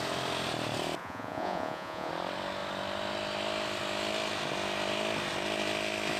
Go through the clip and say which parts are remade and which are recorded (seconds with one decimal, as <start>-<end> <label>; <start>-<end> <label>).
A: 0.0-1.0 recorded; 1.0-2.1 remade; 2.1-6.2 recorded